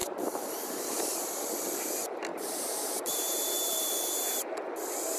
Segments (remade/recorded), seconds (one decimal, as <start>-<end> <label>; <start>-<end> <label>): 0.0-0.8 remade; 0.8-2.3 recorded; 2.3-4.6 remade; 4.6-5.2 recorded